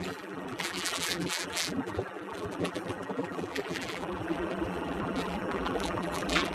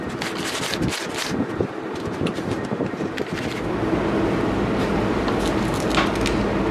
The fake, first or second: first